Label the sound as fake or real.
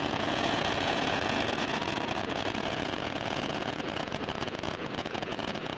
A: fake